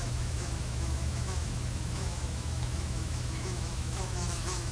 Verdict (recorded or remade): remade